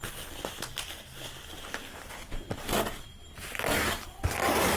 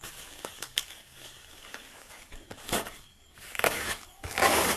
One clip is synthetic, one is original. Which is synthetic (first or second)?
second